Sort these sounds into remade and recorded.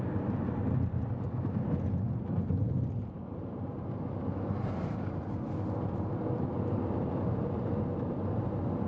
recorded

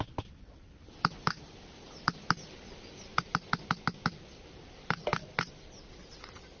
recorded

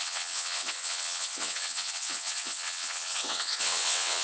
remade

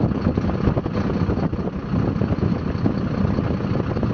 recorded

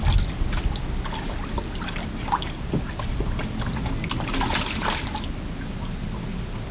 recorded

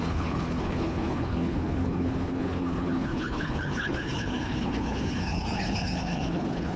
remade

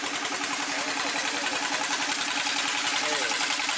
recorded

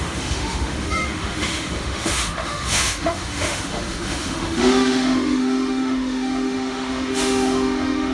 remade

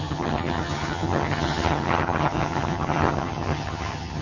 remade